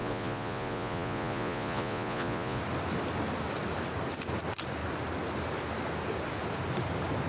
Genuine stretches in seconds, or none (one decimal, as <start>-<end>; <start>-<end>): 2.6-7.3